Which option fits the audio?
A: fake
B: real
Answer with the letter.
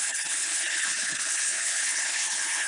A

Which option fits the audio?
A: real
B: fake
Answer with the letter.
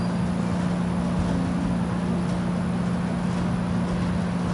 A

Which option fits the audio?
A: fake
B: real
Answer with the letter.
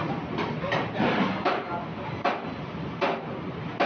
B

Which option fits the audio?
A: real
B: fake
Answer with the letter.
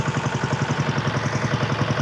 A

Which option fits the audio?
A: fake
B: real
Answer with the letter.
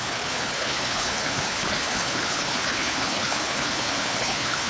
A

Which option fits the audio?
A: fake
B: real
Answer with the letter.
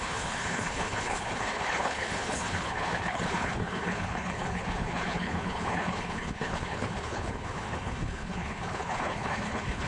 A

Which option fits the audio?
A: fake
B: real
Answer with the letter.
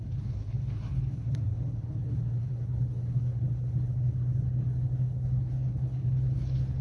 A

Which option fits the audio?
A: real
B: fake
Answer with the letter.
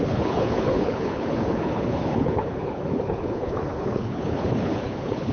B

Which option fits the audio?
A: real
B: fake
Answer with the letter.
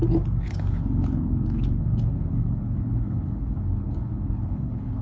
B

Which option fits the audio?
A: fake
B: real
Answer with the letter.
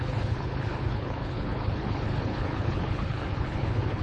A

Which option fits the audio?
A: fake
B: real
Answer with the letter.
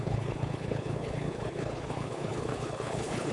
A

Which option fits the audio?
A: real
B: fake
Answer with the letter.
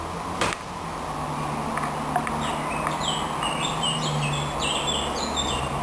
A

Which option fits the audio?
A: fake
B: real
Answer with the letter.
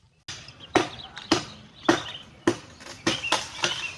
B